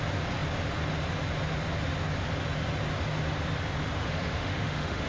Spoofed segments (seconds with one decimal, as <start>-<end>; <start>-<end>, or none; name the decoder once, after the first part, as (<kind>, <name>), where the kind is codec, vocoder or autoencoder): 4.0-5.1 (autoencoder, DAC-VAE)